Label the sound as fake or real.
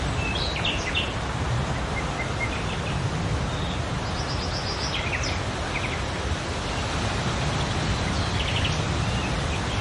real